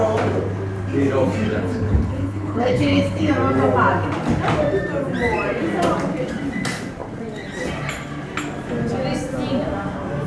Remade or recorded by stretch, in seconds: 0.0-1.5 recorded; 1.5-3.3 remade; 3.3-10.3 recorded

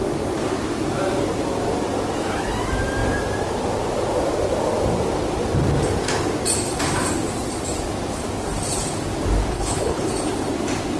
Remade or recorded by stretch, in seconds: 0.0-9.5 recorded; 9.5-10.1 remade; 10.1-11.0 recorded

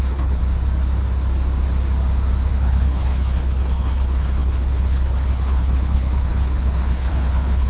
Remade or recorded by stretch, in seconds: 0.0-0.4 remade; 0.4-2.5 recorded; 2.5-7.7 remade

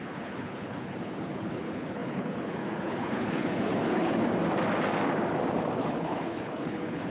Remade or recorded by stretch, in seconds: 0.0-4.2 remade; 4.2-5.8 recorded; 5.8-7.1 remade